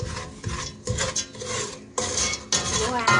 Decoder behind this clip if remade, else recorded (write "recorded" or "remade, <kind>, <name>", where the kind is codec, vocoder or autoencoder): recorded